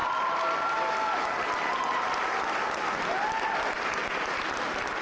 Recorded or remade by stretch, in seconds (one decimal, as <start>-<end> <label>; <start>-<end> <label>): 0.0-5.0 recorded